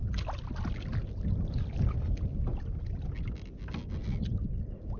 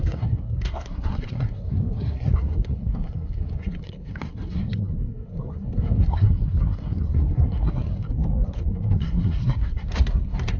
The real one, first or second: first